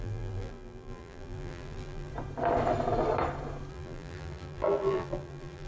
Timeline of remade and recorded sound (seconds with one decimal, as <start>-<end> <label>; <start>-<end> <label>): 0.0-2.1 remade; 2.1-3.7 recorded; 3.7-5.7 remade